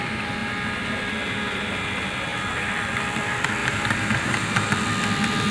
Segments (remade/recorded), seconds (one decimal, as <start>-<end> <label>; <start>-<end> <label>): 0.0-3.6 recorded; 3.6-4.7 remade; 4.7-5.5 recorded